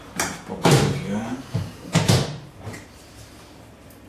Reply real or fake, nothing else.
fake